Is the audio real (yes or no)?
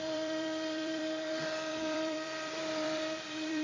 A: no